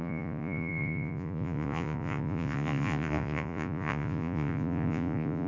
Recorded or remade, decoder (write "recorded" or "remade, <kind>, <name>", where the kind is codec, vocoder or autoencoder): remade, vocoder, Vocos